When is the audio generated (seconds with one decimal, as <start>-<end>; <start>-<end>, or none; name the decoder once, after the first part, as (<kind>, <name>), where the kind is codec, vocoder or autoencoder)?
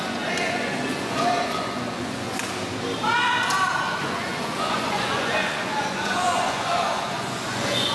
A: 0.0-2.3 (vocoder, Vocos); 3.8-7.9